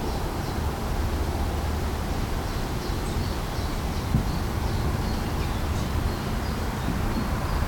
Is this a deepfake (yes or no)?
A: yes